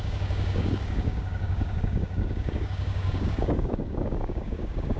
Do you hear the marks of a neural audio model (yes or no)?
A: yes